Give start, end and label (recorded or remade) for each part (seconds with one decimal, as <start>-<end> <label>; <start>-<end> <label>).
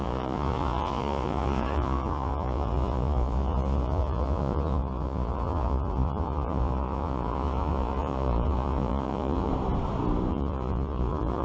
0.0-9.5 remade; 9.5-10.3 recorded; 10.3-11.4 remade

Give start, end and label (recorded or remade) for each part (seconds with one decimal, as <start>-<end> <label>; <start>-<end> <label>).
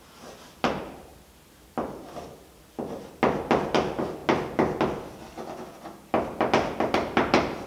0.0-7.7 recorded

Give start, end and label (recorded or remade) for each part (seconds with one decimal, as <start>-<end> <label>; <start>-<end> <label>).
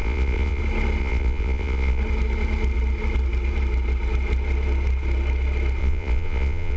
0.0-0.6 remade; 0.6-1.0 recorded; 1.0-2.0 remade; 2.0-5.8 recorded; 5.8-6.8 remade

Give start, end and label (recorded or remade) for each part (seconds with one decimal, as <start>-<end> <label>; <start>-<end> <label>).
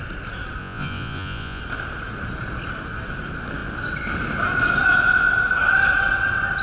0.0-0.6 recorded; 0.6-1.6 remade; 1.6-6.6 recorded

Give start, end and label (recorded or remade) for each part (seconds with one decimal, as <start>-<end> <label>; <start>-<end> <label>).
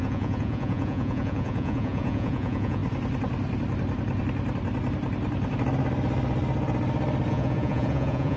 0.0-2.8 remade; 2.8-7.3 recorded; 7.3-8.4 remade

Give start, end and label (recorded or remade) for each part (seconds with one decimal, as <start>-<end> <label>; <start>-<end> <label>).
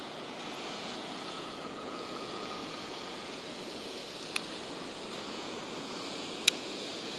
0.0-4.0 remade; 4.0-5.3 recorded; 5.3-7.2 remade